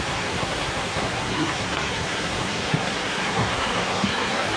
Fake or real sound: fake